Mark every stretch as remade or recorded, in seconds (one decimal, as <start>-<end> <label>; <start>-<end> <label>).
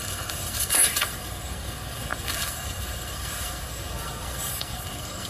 0.0-5.3 remade